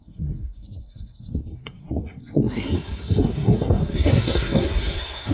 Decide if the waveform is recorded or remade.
remade